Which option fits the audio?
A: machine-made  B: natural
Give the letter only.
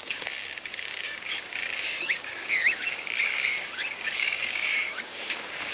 A